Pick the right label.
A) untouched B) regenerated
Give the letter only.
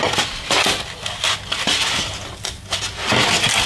A